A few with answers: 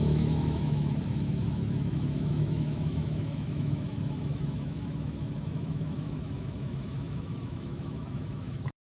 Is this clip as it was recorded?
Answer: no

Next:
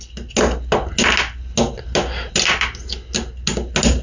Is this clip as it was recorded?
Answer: yes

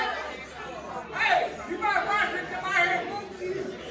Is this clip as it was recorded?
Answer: yes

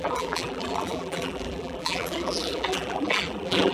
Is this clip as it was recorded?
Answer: no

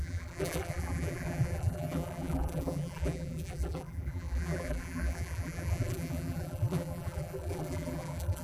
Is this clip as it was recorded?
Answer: no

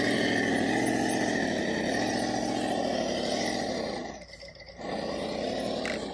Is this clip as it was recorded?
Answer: yes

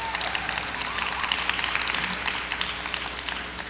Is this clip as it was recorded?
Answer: yes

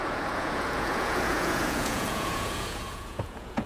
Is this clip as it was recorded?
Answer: no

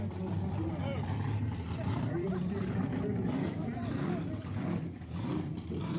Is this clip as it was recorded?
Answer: yes